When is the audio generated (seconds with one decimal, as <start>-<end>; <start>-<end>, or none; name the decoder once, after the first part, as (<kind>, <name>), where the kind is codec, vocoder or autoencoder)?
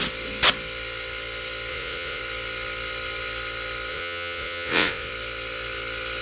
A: 1.7-2.2 (vocoder, Vocos); 3.9-5.1